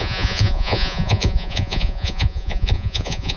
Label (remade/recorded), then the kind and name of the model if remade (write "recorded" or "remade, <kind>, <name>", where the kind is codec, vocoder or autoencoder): remade, vocoder, Vocos